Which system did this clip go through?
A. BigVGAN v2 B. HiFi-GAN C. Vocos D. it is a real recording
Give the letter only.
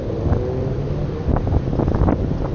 D